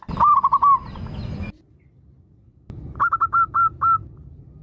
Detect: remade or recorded recorded